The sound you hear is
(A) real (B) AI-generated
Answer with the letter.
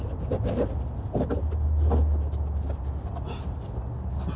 A